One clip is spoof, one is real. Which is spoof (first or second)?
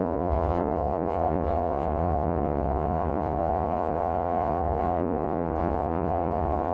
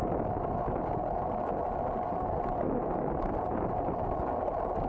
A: first